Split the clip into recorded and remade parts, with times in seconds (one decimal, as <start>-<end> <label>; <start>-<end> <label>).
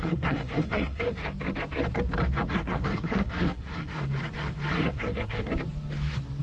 0.0-1.2 remade; 1.2-2.5 recorded; 2.5-4.0 remade; 4.0-4.7 recorded; 4.7-5.5 remade; 5.5-6.4 recorded